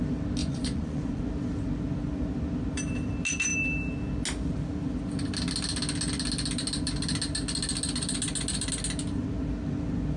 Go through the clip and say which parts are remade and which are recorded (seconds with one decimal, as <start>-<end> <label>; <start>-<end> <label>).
0.0-0.4 recorded; 0.4-1.3 remade; 1.3-10.2 recorded